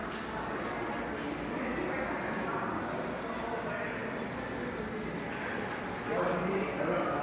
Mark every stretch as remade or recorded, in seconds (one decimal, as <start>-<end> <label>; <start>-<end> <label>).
0.0-7.2 recorded